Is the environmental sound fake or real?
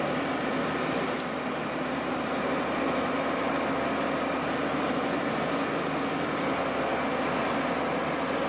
real